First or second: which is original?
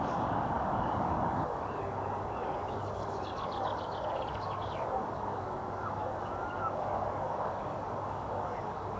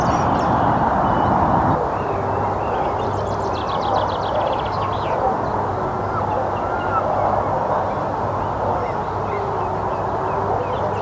second